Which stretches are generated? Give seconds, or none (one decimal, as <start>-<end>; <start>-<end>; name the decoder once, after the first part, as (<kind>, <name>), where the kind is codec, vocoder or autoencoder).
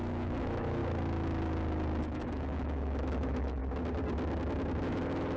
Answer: 0.0-0.8 (autoencoder, DAC-VAE); 2.0-3.6; 4.8-5.4